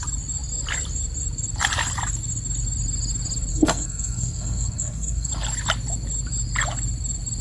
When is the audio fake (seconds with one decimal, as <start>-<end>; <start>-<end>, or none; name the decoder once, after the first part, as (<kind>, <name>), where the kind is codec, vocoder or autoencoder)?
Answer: 3.5-5.3 (codec, SNAC)